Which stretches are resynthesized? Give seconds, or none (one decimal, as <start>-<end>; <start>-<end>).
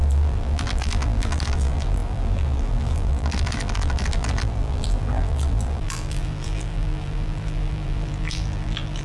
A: 0.0-9.0